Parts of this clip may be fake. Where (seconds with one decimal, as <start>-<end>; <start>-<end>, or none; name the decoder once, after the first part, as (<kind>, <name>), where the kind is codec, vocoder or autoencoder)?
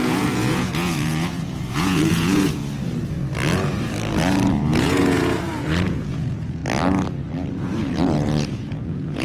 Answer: 0.0-2.6 (vocoder, Vocos); 4.6-6.6; 7.5-9.2